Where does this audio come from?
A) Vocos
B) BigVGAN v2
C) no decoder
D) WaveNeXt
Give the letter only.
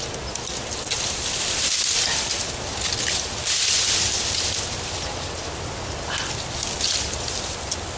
C